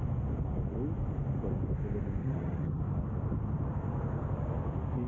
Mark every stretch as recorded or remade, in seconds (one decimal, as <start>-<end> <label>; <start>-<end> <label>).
0.0-2.2 recorded; 2.2-2.8 remade; 2.8-5.1 recorded